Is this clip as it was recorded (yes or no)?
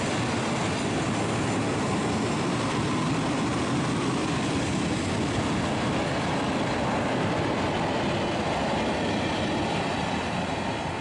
yes